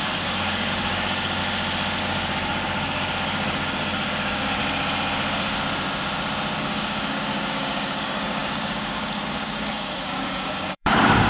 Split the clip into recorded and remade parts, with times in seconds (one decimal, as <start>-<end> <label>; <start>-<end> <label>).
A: 0.0-1.4 remade; 1.4-2.0 recorded; 2.0-4.6 remade; 4.6-6.6 recorded; 6.6-11.3 remade